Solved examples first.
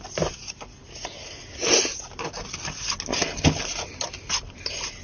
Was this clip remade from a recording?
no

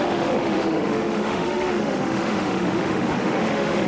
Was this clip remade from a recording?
yes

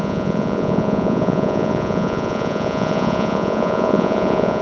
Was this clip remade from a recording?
yes